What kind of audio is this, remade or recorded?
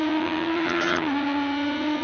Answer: remade